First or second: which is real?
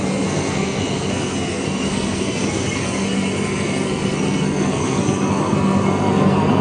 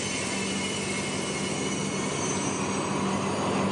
second